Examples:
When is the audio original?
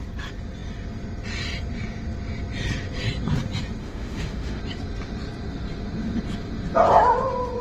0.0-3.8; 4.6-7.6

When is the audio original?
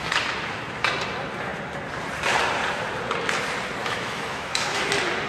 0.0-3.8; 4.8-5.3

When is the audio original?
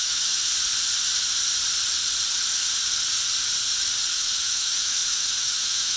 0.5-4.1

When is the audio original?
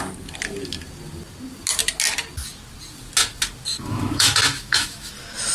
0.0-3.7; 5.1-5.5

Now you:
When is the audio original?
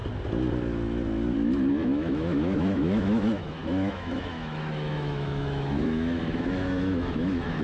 0.0-1.7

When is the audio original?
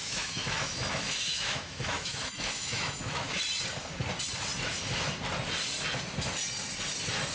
3.4-7.3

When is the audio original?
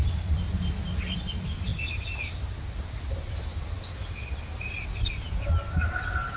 0.0-6.4